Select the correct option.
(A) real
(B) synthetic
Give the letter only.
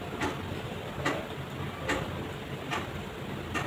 A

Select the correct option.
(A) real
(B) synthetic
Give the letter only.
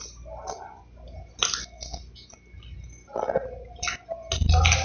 A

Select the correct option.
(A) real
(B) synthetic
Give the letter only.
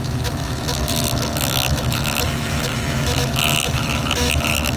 B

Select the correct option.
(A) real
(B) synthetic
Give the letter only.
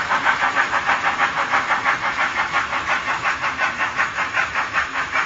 B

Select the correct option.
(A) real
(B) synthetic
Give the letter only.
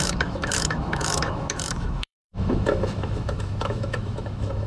B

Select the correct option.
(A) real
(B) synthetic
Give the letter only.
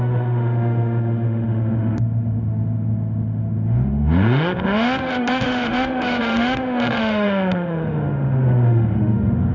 B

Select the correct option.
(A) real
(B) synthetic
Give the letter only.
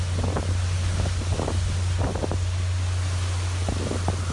A